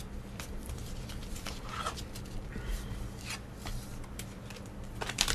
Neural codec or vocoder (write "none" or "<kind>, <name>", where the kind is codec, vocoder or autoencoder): vocoder, BigVGAN v2